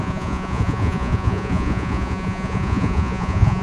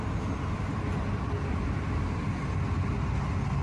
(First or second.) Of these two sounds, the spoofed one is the first